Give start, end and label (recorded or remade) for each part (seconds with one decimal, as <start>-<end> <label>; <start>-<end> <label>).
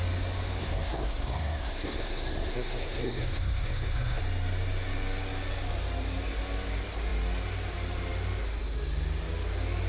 0.0-0.6 recorded; 0.6-4.2 remade; 4.2-9.9 recorded